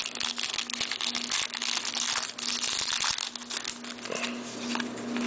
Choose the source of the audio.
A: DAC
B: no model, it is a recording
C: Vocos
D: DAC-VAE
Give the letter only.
B